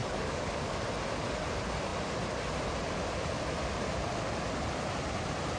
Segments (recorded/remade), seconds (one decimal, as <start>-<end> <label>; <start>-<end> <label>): 0.0-0.7 remade; 0.7-5.6 recorded